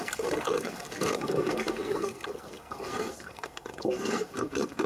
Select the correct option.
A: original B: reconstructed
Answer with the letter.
B